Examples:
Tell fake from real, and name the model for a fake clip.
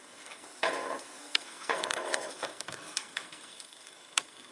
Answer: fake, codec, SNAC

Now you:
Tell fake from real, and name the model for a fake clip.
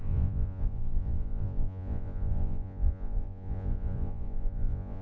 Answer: fake, vocoder, Vocos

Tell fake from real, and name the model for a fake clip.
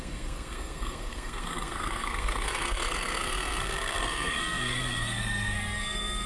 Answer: fake, codec, SNAC